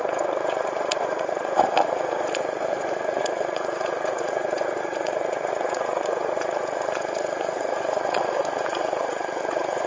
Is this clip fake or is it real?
fake